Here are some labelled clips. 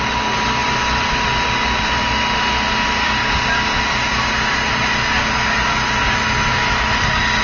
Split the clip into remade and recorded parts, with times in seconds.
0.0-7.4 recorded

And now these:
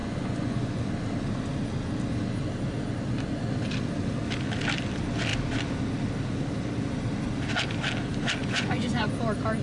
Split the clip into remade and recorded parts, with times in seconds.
0.0-0.8 remade; 0.8-8.4 recorded; 8.4-9.1 remade; 9.1-9.6 recorded

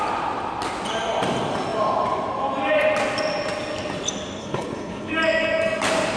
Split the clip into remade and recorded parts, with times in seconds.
0.0-4.4 recorded; 4.4-5.1 remade; 5.1-6.2 recorded

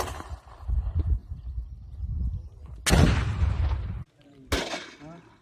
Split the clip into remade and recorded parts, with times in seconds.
0.0-5.4 recorded

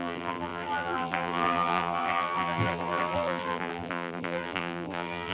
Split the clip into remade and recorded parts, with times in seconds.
0.0-5.3 remade